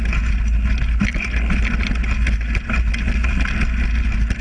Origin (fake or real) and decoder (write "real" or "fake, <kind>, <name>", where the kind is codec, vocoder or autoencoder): real